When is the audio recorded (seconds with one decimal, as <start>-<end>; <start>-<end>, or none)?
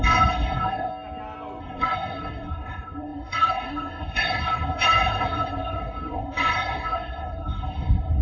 0.9-1.6